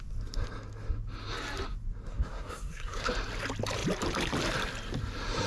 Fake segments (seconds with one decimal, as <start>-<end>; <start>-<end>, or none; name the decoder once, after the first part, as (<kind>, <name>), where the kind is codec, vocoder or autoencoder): 2.1-3.1 (codec, SNAC)